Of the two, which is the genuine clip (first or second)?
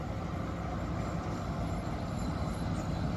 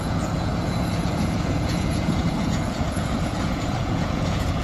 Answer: first